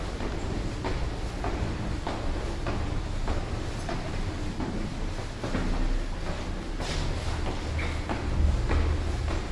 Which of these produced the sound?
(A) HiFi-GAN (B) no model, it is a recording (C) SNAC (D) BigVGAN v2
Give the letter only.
B